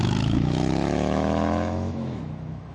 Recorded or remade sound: remade